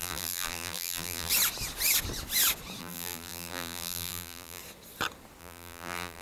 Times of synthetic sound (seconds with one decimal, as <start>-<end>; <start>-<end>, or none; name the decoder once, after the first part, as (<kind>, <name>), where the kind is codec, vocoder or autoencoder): 0.0-1.3 (vocoder, BigVGAN v2); 2.8-4.6; 5.4-6.2